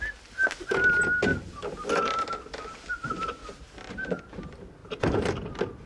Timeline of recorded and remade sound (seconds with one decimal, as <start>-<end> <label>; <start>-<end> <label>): 0.0-5.9 recorded